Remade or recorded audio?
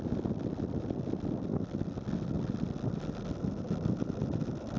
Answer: recorded